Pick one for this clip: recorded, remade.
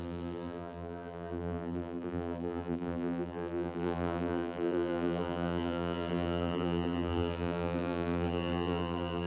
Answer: remade